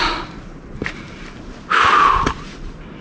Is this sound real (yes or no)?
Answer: yes